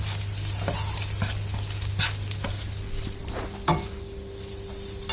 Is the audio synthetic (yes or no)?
no